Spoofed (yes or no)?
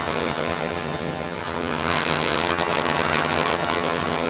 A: yes